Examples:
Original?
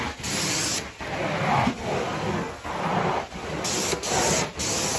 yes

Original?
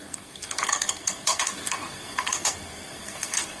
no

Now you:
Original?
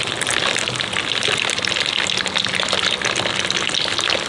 yes